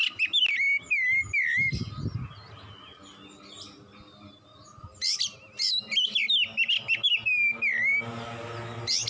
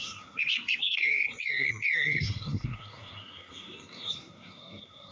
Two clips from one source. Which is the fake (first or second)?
second